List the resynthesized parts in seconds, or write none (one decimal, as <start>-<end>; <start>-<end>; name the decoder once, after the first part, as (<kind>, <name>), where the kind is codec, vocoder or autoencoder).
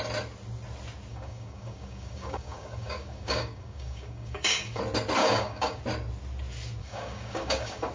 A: 1.1-4.8 (codec, DAC); 5.2-5.8; 6.8-7.9